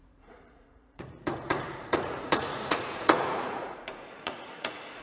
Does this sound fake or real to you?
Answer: fake